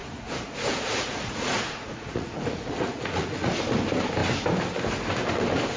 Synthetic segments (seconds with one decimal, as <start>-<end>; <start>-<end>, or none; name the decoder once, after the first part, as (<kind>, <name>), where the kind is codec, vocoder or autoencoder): 0.0-3.5 (vocoder, Vocos)